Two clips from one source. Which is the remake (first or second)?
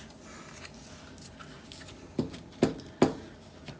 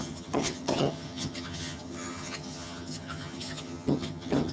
second